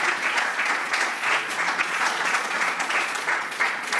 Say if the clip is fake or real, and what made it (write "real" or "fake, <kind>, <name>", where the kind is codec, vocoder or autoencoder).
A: fake, vocoder, Vocos